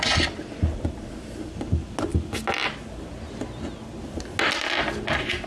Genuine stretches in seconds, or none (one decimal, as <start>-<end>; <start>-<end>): 0.0-5.5